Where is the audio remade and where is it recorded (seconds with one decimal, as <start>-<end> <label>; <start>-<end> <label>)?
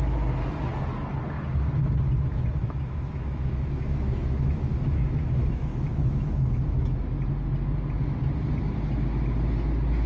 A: 0.0-2.6 recorded; 2.6-7.2 remade; 7.2-10.1 recorded